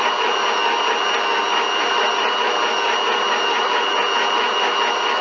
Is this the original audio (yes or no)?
yes